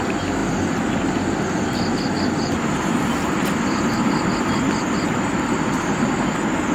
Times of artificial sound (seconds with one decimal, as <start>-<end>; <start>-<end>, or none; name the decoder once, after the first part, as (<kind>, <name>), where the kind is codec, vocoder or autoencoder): none